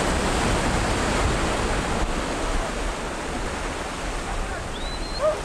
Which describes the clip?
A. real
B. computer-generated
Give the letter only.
A